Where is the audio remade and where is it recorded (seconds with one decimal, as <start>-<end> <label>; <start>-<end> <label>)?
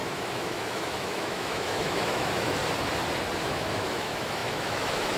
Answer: 0.0-2.6 remade; 2.6-3.4 recorded; 3.4-5.2 remade